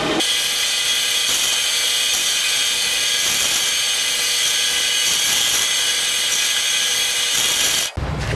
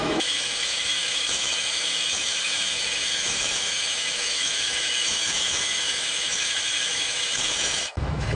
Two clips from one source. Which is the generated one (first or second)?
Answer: second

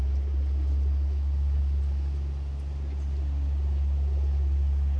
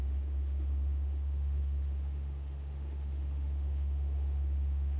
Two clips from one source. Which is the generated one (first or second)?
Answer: second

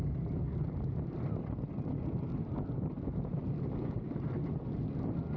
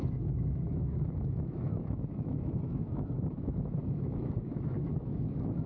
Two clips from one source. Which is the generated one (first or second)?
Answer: second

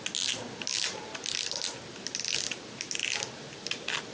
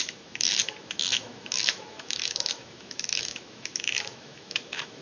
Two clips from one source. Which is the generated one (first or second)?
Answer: second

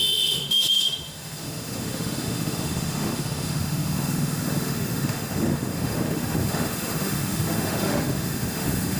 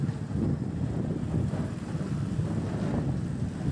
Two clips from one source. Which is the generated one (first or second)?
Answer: first